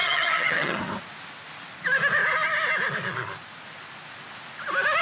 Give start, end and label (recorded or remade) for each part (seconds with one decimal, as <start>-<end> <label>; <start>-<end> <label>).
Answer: 0.0-0.8 remade; 0.8-5.0 recorded